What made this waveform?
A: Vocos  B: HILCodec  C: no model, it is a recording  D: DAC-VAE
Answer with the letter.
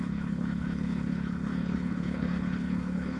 B